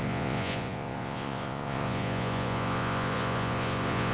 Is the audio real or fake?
fake